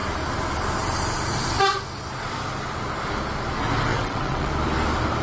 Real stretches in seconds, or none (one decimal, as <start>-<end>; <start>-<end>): 0.0-3.9; 4.5-5.2